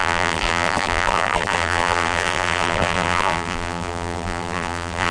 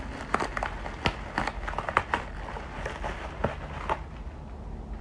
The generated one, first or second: first